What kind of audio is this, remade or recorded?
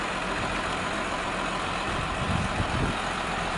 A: remade